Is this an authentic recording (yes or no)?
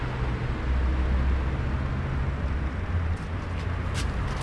yes